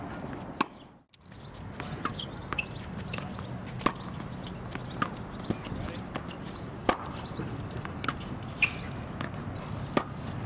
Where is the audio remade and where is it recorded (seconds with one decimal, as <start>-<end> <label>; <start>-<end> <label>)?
0.0-2.4 recorded; 2.4-3.2 remade; 3.2-6.8 recorded; 6.8-8.1 remade; 8.1-10.5 recorded

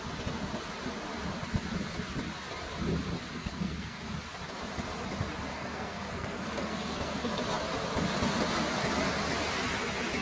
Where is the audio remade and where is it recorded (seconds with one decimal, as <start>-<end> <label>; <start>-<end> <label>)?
0.0-3.4 recorded; 3.4-4.0 remade; 4.0-5.5 recorded; 5.5-7.3 remade; 7.3-10.2 recorded

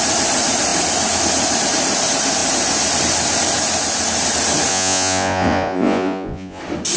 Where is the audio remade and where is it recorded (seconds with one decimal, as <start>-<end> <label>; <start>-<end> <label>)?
0.0-4.7 recorded; 4.7-6.6 remade; 6.6-7.0 recorded

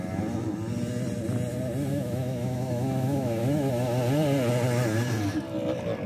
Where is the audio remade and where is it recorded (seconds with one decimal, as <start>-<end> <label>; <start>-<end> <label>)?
0.0-1.9 recorded; 1.9-3.7 remade; 3.7-6.1 recorded

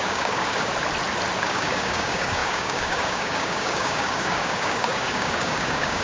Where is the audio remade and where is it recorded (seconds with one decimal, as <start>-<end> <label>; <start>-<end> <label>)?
0.0-0.7 remade; 0.7-1.4 recorded; 1.4-6.0 remade

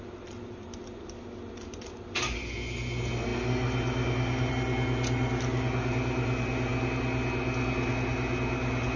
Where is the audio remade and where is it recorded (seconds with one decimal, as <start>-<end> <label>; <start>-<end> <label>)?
0.0-9.0 recorded

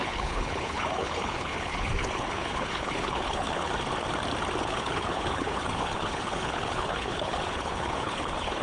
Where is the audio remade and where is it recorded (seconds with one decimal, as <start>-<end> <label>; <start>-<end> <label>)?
0.0-3.7 remade; 3.7-4.6 recorded; 4.6-8.6 remade

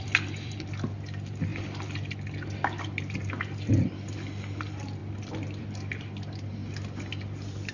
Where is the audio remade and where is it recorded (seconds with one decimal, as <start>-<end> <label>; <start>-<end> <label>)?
0.0-5.0 remade; 5.0-5.6 recorded; 5.6-6.6 remade; 6.6-7.2 recorded; 7.2-7.7 remade